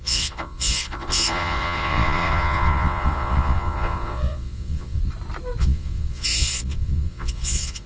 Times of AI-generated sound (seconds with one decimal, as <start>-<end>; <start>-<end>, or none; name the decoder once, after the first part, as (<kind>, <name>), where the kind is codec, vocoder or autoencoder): 0.0-5.0 (vocoder, Vocos); 5.6-7.9